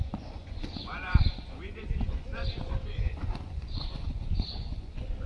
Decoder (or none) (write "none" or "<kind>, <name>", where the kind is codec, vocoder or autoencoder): vocoder, Vocos